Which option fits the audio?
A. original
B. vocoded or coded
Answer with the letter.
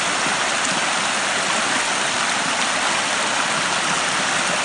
A